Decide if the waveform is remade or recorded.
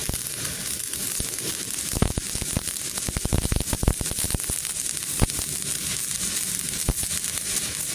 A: remade